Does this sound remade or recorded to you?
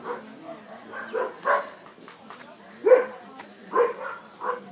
recorded